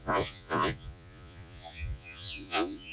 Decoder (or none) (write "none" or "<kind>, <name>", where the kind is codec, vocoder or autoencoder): vocoder, Vocos